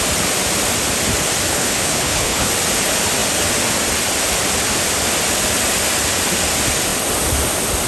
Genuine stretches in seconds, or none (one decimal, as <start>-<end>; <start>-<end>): 0.0-1.5; 2.5-7.9